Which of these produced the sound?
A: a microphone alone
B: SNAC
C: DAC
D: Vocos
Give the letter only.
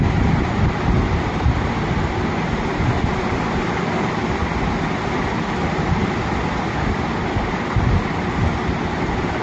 A